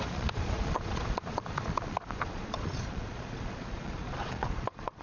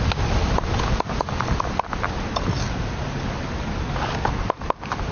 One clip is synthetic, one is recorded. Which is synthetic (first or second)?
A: first